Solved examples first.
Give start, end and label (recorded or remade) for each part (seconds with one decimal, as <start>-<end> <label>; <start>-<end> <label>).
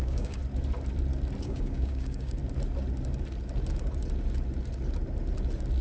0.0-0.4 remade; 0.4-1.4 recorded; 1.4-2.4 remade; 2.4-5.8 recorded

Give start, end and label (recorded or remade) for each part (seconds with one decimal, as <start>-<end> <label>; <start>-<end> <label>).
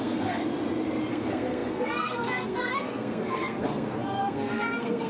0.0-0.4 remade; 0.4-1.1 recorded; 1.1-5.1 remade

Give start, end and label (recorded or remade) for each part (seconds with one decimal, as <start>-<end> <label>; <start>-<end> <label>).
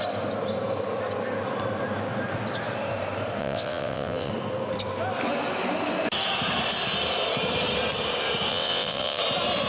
0.0-3.4 recorded; 3.4-4.3 remade; 4.3-8.5 recorded; 8.5-9.2 remade; 9.2-9.7 recorded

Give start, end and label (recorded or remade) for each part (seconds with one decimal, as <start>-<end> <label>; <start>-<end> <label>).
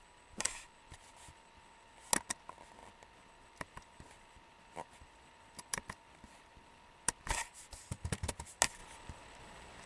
0.0-2.8 recorded; 2.8-7.2 remade; 7.2-9.9 recorded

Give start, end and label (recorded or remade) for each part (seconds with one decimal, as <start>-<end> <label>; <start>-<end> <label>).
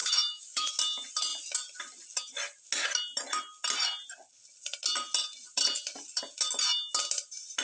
0.0-0.7 remade; 0.7-7.6 recorded